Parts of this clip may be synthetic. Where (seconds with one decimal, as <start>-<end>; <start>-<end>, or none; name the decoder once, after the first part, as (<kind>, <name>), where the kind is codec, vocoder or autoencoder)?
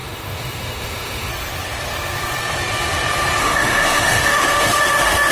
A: 0.0-1.3 (autoencoder, DAC-VAE); 3.4-5.3